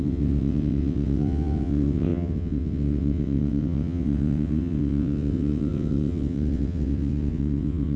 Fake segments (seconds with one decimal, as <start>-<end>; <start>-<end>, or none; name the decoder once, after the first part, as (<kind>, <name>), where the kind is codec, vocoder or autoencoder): 0.0-8.0 (vocoder, WaveNeXt)